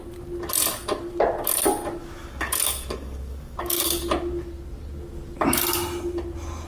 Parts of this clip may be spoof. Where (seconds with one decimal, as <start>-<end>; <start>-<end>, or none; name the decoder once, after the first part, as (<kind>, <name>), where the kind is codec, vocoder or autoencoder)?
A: 2.0-4.1 (codec, DAC)